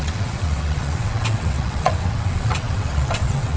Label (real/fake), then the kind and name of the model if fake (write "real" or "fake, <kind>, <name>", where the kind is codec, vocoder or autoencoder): fake, vocoder, WaveNeXt